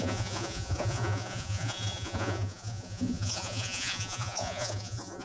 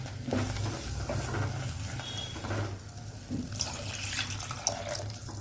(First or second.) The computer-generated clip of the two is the first